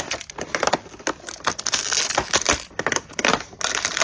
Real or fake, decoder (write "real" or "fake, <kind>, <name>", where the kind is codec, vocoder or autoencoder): real